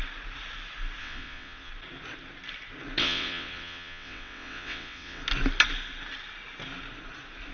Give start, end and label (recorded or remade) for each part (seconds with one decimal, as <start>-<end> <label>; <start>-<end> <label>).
0.0-1.0 recorded; 1.0-1.7 remade; 1.7-3.0 recorded; 3.0-5.2 remade; 5.2-7.5 recorded